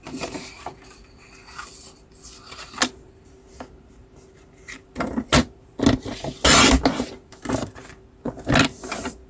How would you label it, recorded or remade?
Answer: recorded